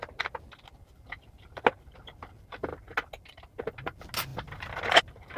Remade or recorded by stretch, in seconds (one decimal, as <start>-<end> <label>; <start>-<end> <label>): 0.0-4.3 recorded; 4.3-5.0 remade; 5.0-5.4 recorded